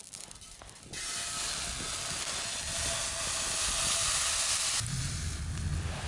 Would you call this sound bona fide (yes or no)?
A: yes